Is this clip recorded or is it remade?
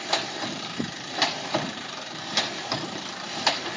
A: remade